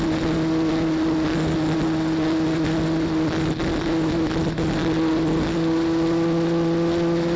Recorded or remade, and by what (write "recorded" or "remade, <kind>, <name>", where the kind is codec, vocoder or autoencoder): recorded